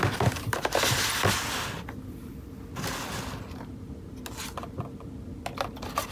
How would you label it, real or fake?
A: real